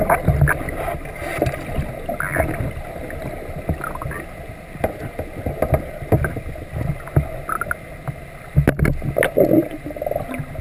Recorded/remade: recorded